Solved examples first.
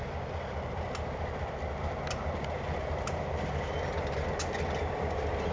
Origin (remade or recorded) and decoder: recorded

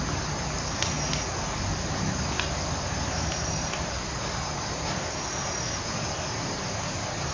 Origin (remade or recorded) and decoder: recorded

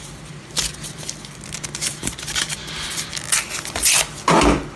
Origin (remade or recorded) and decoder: recorded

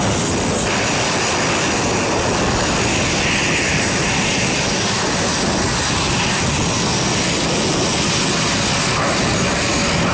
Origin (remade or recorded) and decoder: recorded